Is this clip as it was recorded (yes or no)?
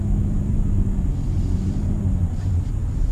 yes